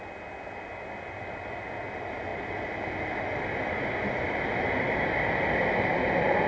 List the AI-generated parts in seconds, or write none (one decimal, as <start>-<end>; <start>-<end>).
none